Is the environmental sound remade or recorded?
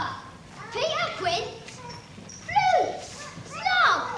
remade